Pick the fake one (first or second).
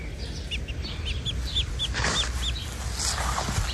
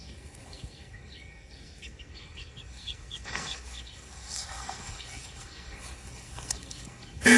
second